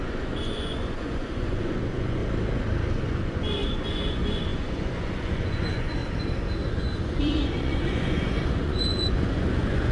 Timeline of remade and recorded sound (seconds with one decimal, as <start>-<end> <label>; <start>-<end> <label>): 0.0-2.2 remade; 2.2-2.9 recorded; 2.9-6.0 remade; 6.0-6.7 recorded; 6.7-9.9 remade